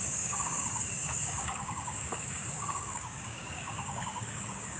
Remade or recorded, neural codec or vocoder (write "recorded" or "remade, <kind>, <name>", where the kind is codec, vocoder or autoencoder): remade, codec, DAC